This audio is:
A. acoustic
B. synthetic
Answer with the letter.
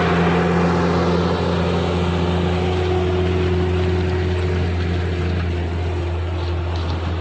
A